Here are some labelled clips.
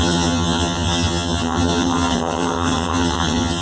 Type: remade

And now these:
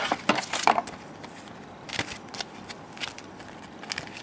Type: recorded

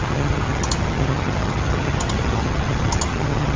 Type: remade